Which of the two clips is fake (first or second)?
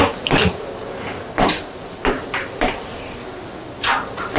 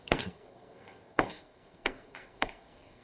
second